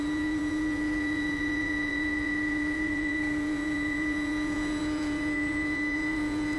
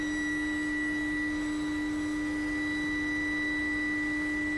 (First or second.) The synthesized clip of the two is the first